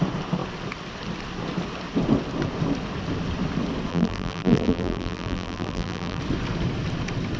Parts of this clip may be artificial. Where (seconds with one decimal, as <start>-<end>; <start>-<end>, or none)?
3.9-6.2